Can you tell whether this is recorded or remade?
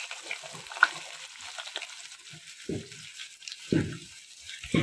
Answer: recorded